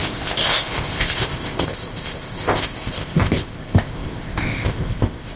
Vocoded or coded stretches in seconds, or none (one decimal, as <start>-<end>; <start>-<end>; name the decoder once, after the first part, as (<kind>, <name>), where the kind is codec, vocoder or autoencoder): 0.0-5.4 (codec, ZipCodec)